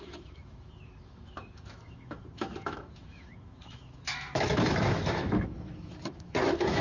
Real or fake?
fake